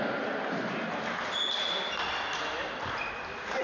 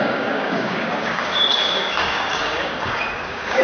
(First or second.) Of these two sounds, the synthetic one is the second